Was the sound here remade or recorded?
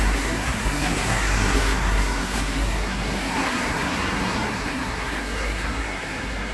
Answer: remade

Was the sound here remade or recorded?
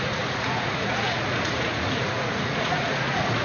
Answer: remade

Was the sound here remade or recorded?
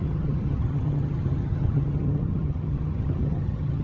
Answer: remade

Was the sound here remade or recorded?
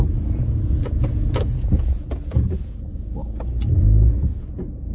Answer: remade